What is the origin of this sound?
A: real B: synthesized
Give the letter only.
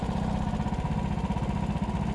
A